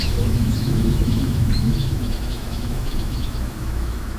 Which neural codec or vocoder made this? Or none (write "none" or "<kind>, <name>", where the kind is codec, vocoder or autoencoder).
autoencoder, DAC-VAE